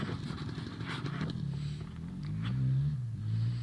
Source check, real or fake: real